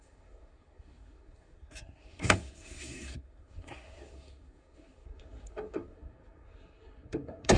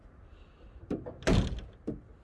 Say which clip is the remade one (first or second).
first